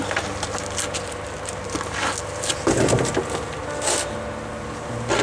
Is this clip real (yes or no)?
yes